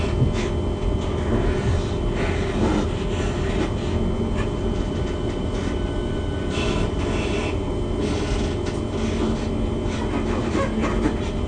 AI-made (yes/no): no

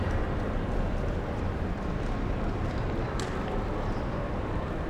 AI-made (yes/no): yes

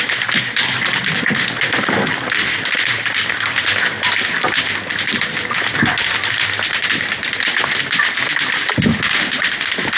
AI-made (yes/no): no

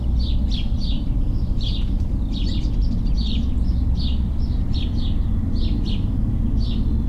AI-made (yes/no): no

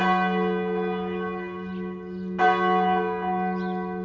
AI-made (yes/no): no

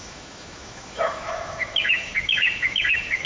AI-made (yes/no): yes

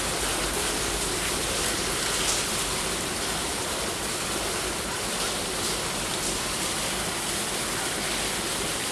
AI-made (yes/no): no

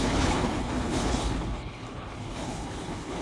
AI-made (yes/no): yes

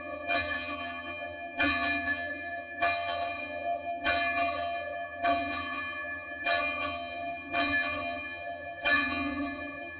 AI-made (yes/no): yes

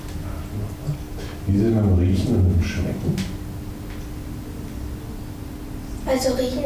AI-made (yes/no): no